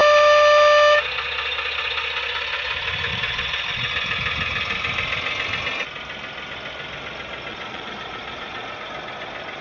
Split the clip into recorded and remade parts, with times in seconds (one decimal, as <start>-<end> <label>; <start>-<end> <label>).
0.0-3.1 recorded; 3.1-3.9 remade; 3.9-7.5 recorded; 7.5-8.7 remade; 8.7-9.6 recorded